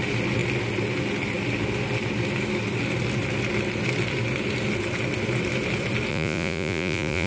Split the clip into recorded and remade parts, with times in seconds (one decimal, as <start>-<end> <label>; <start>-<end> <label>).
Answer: 0.0-6.1 recorded; 6.1-7.3 remade